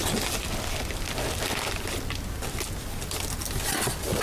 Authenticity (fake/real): real